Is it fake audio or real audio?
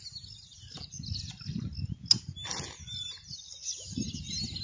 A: real